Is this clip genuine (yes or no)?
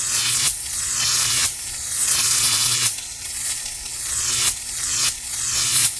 no